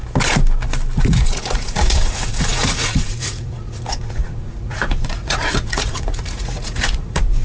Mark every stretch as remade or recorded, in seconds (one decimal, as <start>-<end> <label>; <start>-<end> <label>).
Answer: 0.0-1.0 recorded; 1.0-7.4 remade